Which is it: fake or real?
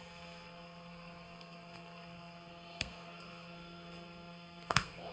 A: fake